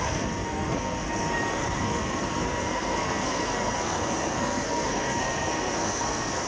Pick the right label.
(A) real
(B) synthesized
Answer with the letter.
B